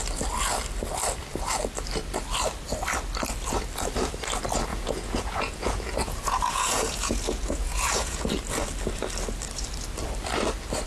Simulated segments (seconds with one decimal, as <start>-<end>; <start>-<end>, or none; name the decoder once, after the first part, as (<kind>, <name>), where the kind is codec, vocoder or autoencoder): 4.7-8.3 (vocoder, Vocos)